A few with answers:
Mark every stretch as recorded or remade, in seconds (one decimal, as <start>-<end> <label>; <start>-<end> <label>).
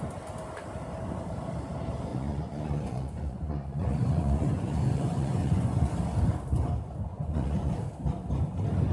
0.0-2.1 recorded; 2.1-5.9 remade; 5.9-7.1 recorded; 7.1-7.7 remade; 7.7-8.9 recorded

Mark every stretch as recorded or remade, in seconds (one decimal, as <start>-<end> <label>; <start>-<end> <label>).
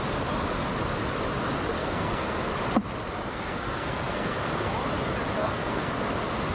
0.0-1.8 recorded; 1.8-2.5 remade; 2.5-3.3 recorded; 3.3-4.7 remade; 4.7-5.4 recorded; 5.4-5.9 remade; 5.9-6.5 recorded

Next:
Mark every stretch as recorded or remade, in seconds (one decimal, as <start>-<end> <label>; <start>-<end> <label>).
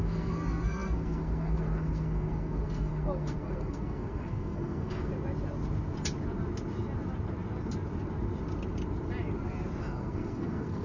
0.0-5.1 remade; 5.1-9.8 recorded; 9.8-10.8 remade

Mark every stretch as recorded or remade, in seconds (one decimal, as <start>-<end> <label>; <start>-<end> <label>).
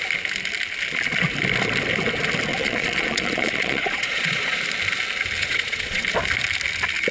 0.0-2.5 recorded; 2.5-4.6 remade; 4.6-5.4 recorded; 5.4-6.0 remade; 6.0-7.1 recorded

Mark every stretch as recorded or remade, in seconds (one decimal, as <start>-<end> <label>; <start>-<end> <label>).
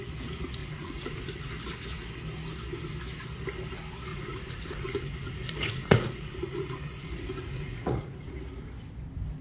0.0-0.6 recorded; 0.6-1.5 remade; 1.5-4.1 recorded; 4.1-8.3 remade; 8.3-9.4 recorded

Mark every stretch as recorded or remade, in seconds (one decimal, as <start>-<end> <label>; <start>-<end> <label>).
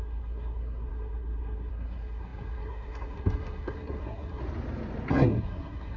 0.0-4.4 remade; 4.4-5.1 recorded; 5.1-6.0 remade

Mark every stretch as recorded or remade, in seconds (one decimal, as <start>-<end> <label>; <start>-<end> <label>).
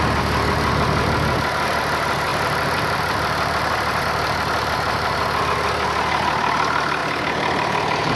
0.0-2.3 recorded; 2.3-5.4 remade; 5.4-7.0 recorded; 7.0-8.2 remade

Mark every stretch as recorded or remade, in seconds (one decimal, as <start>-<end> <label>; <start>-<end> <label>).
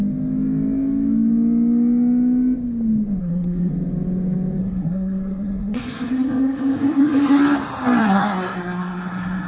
0.0-3.2 recorded; 3.2-3.7 remade; 3.7-4.6 recorded; 4.6-7.4 remade; 7.4-8.0 recorded; 8.0-9.5 remade